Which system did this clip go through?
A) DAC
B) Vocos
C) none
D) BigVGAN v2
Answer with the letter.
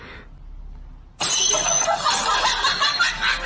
C